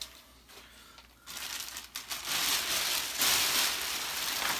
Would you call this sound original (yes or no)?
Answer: yes